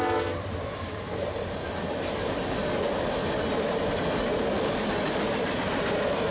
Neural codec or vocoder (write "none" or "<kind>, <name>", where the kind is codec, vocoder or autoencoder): none